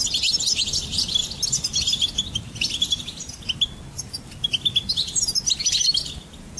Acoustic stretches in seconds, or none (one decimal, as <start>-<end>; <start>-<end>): 0.0-6.6